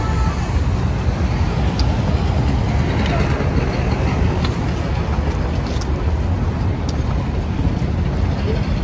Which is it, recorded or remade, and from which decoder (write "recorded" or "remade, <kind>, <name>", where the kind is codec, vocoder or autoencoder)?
recorded